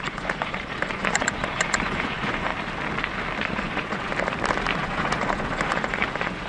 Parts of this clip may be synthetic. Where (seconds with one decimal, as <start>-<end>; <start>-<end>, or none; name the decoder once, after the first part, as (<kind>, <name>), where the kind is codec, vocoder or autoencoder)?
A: 0.0-2.5 (vocoder, Vocos); 3.4-4.1; 4.8-6.5